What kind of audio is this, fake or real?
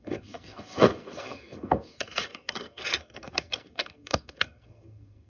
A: fake